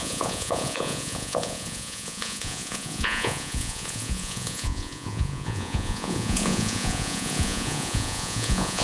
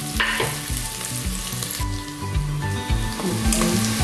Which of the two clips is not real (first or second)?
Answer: first